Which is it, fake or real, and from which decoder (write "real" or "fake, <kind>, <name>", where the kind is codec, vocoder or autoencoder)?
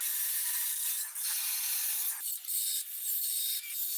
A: real